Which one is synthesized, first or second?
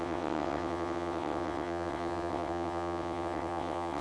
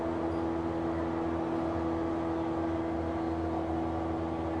first